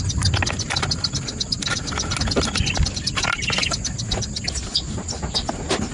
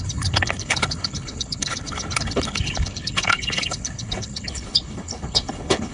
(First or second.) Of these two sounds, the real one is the first